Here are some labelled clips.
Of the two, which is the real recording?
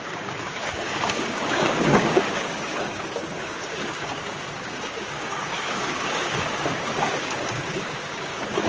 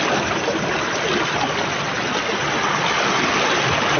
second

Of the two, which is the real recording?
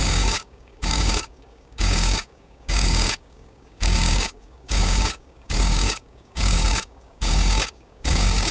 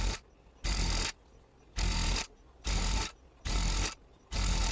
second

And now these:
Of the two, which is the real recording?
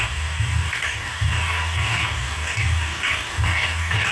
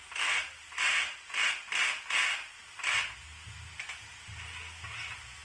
second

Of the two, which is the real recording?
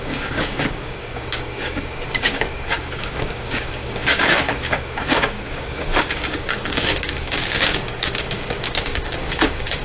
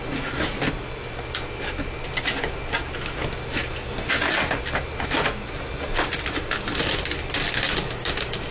second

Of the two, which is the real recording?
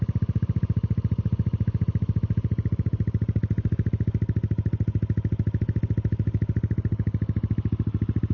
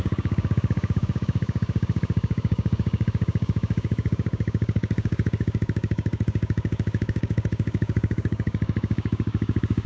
first